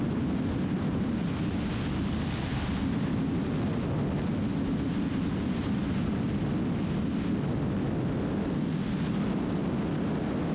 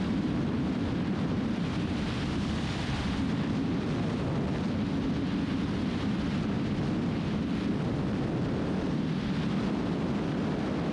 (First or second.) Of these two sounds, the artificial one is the second